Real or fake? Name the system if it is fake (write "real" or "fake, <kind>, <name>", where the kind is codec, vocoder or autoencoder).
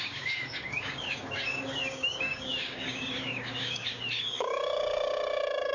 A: fake, codec, DAC